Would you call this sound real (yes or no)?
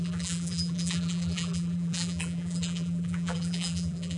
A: no